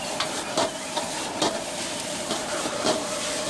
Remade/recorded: remade